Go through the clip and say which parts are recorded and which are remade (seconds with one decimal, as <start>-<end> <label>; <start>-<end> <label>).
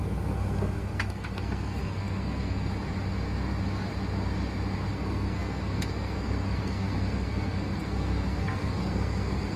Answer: 0.0-2.7 remade; 2.7-4.9 recorded; 4.9-9.6 remade